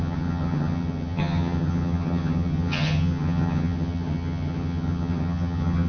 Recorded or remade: remade